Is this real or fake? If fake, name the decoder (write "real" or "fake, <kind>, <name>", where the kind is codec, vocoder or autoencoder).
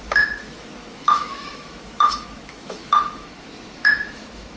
fake, autoencoder, DAC-VAE